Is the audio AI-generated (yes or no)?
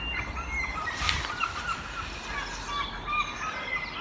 no